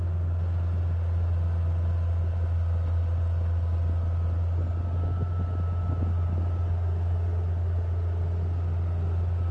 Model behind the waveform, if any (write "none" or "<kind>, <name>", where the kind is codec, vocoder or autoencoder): none